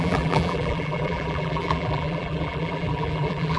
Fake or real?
fake